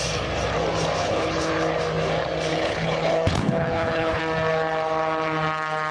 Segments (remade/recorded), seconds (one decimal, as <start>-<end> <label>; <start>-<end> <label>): 0.0-1.0 recorded; 1.0-1.5 remade; 1.5-2.5 recorded; 2.5-4.2 remade; 4.2-5.9 recorded